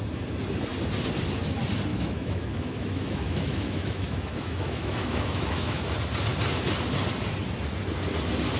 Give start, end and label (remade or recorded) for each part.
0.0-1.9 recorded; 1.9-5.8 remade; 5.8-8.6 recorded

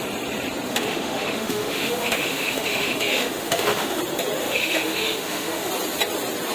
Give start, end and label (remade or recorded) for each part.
0.0-0.7 recorded; 0.7-4.0 remade; 4.0-4.4 recorded; 4.4-5.7 remade; 5.7-6.5 recorded

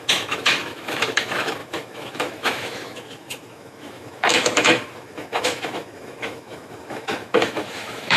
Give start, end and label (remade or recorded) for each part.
0.0-8.2 remade

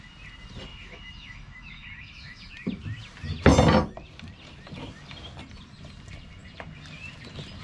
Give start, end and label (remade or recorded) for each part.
0.0-0.7 recorded; 0.7-2.5 remade; 2.5-7.6 recorded

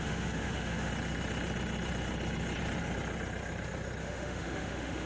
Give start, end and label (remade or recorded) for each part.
0.0-0.9 remade; 0.9-4.0 recorded; 4.0-5.1 remade